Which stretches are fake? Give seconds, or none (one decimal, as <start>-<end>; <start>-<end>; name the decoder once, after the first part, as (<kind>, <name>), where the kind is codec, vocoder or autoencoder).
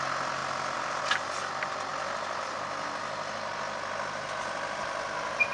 none